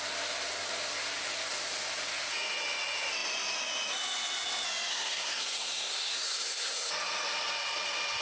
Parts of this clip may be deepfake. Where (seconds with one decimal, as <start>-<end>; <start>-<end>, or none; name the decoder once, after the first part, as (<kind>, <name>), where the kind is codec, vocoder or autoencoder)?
4.9-6.9 (codec, SNAC)